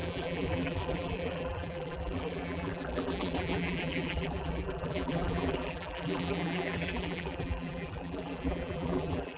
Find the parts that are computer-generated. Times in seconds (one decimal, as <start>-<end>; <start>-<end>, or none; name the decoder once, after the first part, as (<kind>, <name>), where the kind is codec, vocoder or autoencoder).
0.0-9.4 (vocoder, BigVGAN v2)